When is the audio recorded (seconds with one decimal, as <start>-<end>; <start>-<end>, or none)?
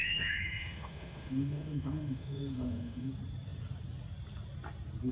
3.1-5.1